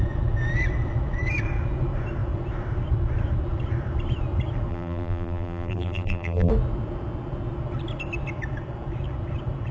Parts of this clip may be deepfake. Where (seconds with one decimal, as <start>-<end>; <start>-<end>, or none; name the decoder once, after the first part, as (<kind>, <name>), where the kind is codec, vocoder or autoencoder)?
4.7-6.5 (vocoder, BigVGAN v2)